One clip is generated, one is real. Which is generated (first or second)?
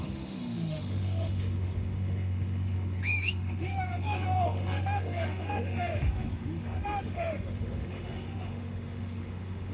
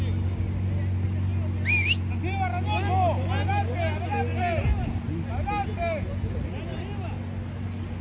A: first